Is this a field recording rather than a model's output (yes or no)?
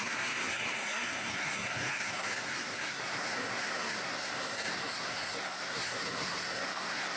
no